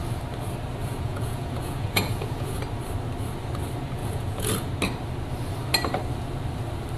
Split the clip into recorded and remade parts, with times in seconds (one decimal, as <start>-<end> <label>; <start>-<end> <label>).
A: 0.0-0.8 recorded; 0.8-2.6 remade; 2.6-4.0 recorded; 4.0-4.7 remade; 4.7-7.0 recorded